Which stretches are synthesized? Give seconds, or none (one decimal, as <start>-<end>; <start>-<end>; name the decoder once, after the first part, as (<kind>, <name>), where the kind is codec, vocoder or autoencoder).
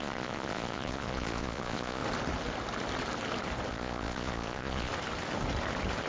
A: 0.0-2.0 (vocoder, Vocos); 3.7-4.9